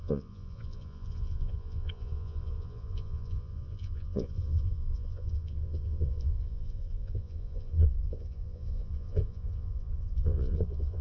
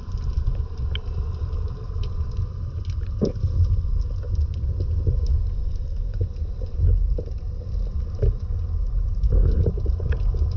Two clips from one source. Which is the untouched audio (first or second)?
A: second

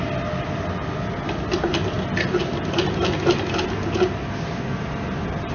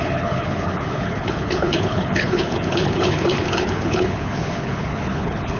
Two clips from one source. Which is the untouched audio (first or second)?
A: first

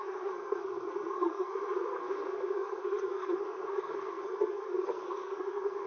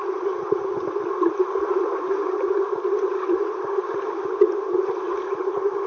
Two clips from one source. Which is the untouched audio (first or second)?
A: second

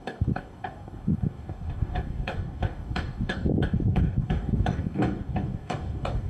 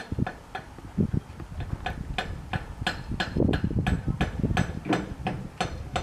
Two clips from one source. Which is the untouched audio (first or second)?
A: second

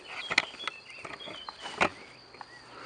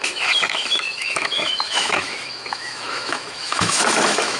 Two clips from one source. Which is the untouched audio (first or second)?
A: first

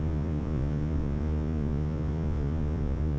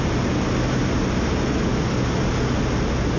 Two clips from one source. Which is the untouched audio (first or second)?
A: second